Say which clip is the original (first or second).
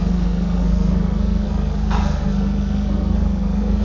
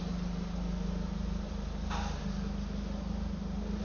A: second